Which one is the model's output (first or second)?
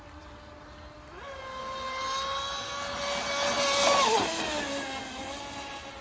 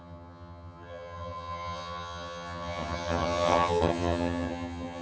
second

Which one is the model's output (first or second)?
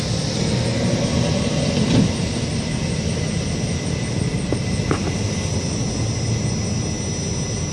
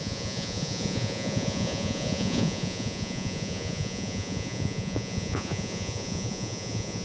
second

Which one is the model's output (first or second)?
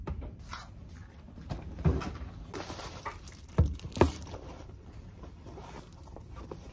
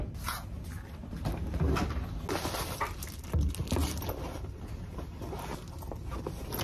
first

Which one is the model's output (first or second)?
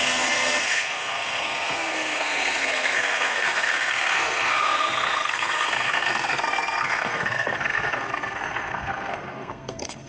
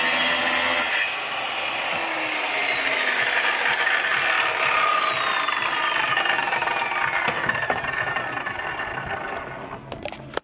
first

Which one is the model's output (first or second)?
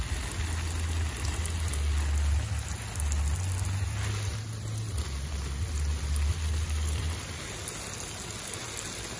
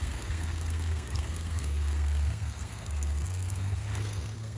second